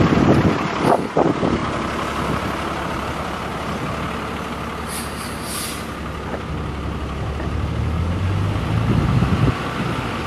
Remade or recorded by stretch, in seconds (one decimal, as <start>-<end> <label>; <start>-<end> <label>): 0.0-10.3 recorded